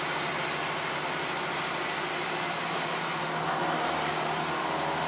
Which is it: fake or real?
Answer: real